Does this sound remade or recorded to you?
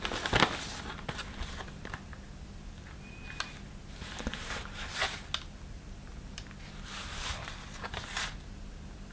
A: recorded